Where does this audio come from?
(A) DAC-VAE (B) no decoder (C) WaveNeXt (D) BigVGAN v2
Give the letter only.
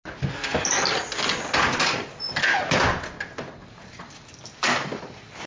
B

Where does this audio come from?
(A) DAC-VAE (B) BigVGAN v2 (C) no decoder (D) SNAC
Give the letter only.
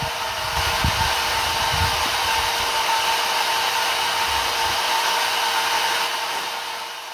C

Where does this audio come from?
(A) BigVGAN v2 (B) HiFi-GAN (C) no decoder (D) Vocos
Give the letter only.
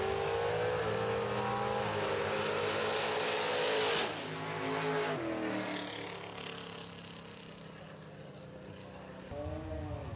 C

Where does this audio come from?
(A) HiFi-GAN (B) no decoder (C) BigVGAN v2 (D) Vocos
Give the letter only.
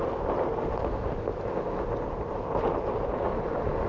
B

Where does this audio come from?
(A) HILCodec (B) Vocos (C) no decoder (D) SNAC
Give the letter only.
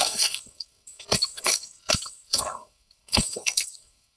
D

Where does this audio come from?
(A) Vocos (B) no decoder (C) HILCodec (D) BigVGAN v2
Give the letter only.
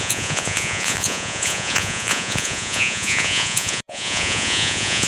A